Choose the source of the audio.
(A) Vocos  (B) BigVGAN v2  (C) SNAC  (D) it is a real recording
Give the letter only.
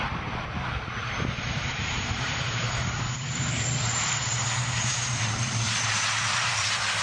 B